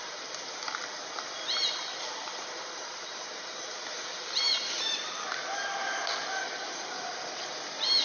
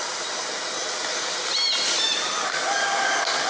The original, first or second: second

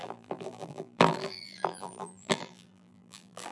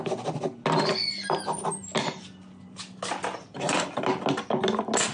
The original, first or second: second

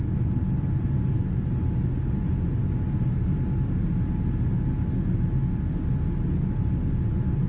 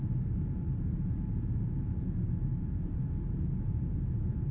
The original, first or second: first